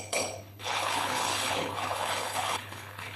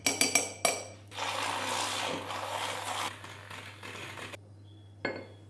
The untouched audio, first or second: second